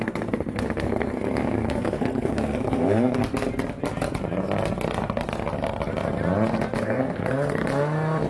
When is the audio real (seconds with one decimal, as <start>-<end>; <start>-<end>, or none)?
3.2-6.8; 7.6-8.3